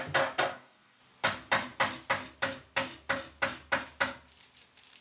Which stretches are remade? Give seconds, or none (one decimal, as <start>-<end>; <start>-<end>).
0.5-1.0